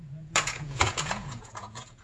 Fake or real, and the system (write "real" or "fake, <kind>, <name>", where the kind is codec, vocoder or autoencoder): fake, vocoder, Vocos